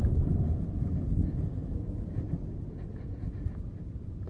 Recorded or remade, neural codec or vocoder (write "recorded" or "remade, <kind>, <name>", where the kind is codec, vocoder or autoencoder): recorded